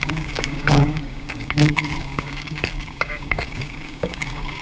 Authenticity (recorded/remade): remade